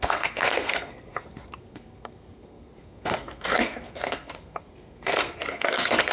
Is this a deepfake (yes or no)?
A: yes